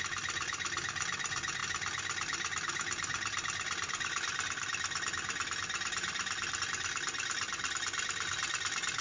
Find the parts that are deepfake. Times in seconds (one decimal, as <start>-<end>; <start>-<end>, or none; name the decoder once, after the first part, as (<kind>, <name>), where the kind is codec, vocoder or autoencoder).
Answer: none